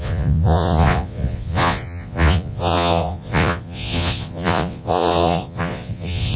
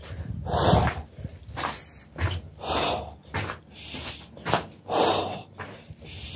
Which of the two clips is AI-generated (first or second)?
first